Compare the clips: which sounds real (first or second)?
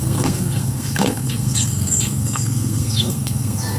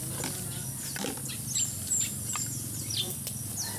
second